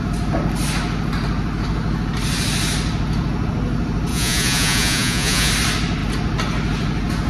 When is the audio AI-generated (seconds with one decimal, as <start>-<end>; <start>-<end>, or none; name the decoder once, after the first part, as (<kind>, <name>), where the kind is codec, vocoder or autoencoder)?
4.1-5.5 (vocoder, Vocos)